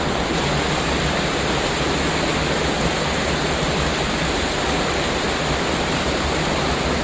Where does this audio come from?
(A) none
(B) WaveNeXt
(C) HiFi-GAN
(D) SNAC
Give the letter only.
A